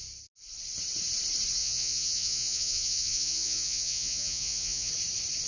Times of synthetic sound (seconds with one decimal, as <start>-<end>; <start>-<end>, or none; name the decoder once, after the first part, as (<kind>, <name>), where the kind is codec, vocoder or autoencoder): 1.6-4.9 (vocoder, Vocos)